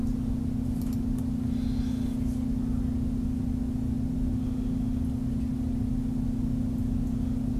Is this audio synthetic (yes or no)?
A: no